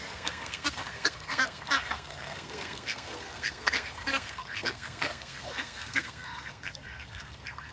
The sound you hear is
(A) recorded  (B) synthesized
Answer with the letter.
B